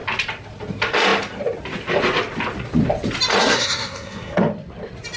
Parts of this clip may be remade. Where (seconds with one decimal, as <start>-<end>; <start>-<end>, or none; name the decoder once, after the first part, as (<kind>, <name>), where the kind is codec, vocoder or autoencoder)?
3.4-4.4 (codec, SNAC)